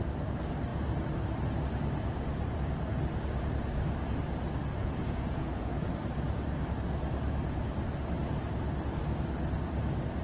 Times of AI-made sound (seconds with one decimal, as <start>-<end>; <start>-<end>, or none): 4.8-5.9